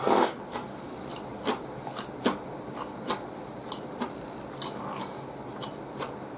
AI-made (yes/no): no